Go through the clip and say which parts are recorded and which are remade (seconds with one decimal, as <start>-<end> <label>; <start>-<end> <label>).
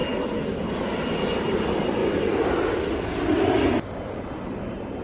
0.0-5.0 recorded